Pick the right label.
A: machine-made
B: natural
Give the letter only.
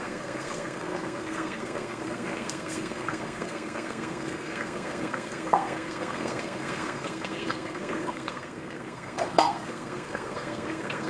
A